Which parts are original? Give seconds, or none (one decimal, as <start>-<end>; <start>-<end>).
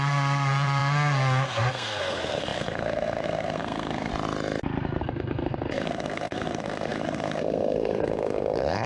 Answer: 4.1-5.0